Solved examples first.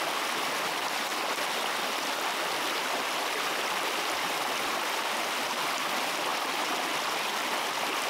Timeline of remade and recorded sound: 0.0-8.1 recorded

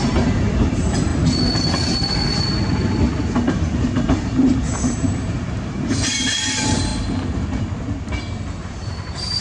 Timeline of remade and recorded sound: 0.0-1.1 remade; 1.1-3.5 recorded; 3.5-6.9 remade; 6.9-8.6 recorded; 8.6-9.4 remade

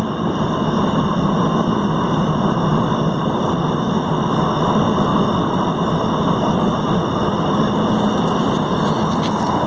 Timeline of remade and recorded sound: 0.0-5.1 recorded; 5.1-5.7 remade; 5.7-9.7 recorded

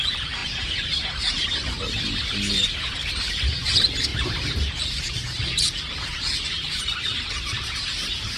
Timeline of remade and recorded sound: 0.0-8.4 remade

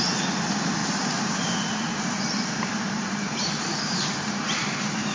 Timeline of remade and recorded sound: 0.0-0.8 recorded; 0.8-2.0 remade; 2.0-2.7 recorded; 2.7-5.1 remade

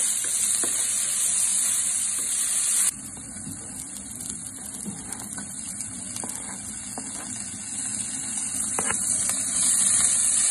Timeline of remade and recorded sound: 0.0-1.5 recorded; 1.5-6.0 remade; 6.0-7.9 recorded; 7.9-10.1 remade; 10.1-10.5 recorded

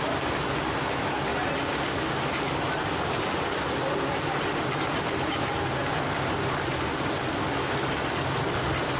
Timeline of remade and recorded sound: 0.0-1.3 recorded; 1.3-2.4 remade; 2.4-9.0 recorded